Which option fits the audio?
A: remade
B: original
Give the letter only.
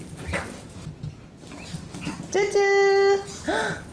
B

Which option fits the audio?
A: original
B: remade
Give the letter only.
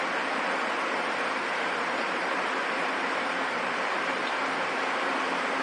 B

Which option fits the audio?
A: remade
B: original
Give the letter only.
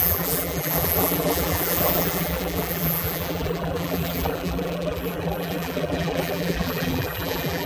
A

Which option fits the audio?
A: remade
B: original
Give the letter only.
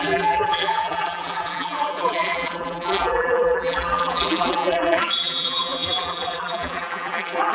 A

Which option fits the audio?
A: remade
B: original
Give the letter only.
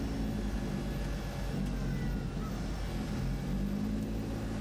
B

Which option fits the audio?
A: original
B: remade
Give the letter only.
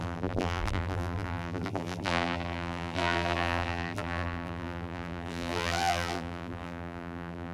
B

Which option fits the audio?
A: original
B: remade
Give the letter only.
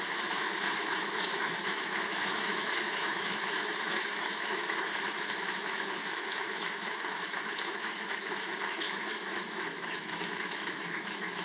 B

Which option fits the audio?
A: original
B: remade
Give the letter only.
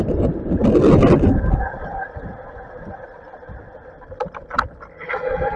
A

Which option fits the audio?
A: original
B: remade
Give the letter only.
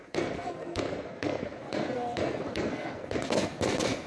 B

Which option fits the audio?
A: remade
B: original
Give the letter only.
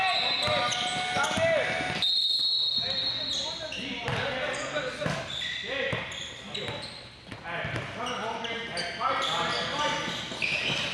B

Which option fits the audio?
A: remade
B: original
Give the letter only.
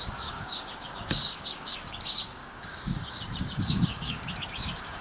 A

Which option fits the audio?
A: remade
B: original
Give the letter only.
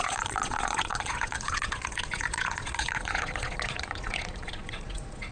A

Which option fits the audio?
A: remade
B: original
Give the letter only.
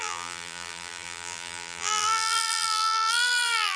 A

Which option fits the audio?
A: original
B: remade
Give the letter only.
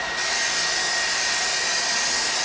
A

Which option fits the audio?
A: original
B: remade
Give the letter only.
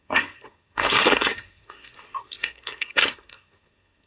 B